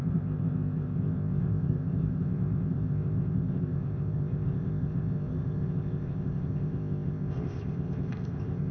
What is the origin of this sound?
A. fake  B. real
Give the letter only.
A